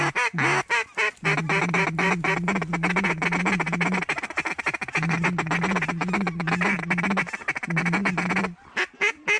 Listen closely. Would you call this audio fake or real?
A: real